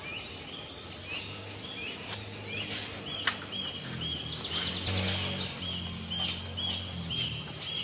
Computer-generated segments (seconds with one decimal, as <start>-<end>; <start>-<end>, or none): none